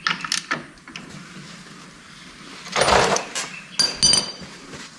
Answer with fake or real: real